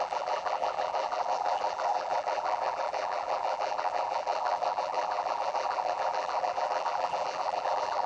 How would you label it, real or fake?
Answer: fake